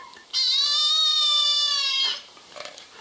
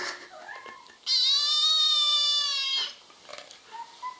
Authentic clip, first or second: second